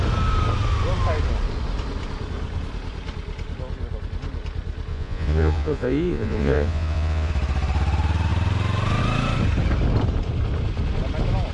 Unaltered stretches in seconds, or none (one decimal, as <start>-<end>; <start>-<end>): 0.0-4.9; 7.3-11.5